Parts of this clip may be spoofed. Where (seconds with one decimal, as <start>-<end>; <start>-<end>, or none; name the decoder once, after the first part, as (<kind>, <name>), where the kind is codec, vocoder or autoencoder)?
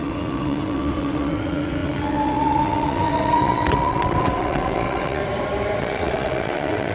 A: 0.0-5.2 (vocoder, WaveNeXt); 5.8-6.9